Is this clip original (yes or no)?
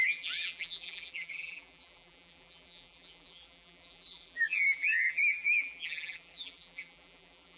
no